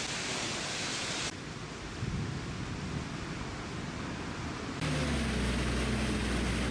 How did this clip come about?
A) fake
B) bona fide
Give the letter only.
B